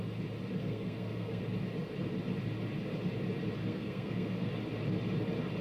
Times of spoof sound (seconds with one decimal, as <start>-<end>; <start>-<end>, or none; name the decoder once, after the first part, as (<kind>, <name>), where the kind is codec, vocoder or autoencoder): 0.6-1.4 (codec, SNAC); 3.6-4.5